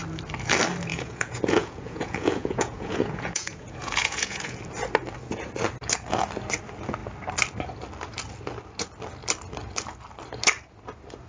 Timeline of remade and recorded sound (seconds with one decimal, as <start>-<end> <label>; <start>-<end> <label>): 0.0-0.9 recorded; 0.9-4.6 remade; 4.6-11.3 recorded